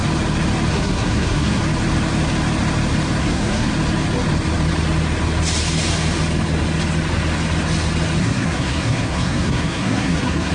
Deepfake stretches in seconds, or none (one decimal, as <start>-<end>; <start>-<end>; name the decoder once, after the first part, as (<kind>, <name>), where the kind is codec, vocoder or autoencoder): 0.7-1.6 (codec, SNAC); 3.2-3.7; 8.2-10.5